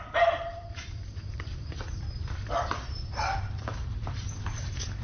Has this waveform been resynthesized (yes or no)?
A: yes